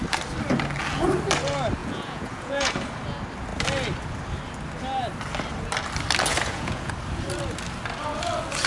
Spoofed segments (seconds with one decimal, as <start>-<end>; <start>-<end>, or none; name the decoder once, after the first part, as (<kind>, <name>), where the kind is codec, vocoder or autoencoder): 1.8-2.7 (vocoder, Vocos); 6.3-6.9